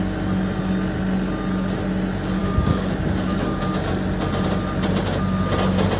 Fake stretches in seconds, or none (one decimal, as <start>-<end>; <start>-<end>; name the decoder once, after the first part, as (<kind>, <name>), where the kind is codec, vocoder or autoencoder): 2.4-3.6 (codec, DAC)